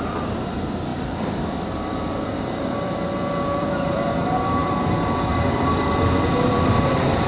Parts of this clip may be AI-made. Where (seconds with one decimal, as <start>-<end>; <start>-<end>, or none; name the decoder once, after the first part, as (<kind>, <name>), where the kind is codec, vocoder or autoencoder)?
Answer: 0.9-4.0 (vocoder, BigVGAN v2); 4.6-5.2